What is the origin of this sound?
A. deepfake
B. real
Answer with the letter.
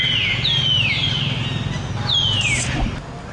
B